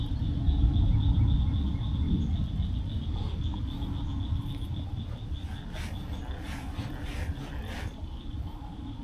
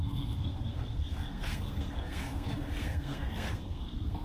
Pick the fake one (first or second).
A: second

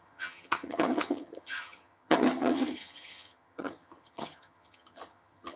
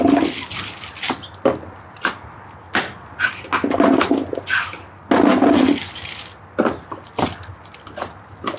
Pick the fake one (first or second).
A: first